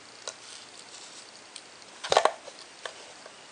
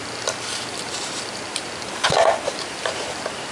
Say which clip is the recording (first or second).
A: first